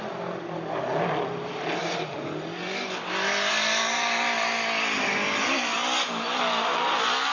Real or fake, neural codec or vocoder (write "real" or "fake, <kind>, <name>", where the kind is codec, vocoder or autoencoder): real